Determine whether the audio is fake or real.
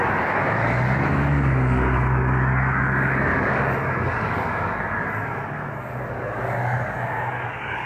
fake